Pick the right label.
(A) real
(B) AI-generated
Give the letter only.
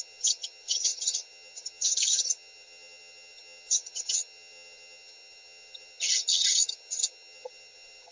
B